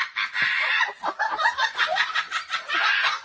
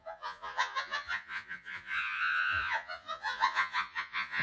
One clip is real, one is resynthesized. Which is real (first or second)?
first